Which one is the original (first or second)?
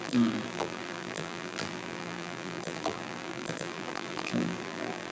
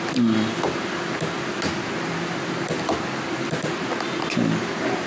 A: second